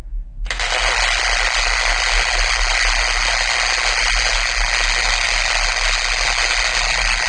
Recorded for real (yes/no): yes